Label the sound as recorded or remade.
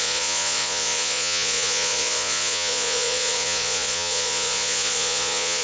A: remade